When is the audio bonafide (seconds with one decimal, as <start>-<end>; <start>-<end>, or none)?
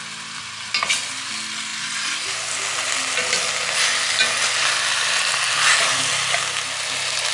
0.0-7.3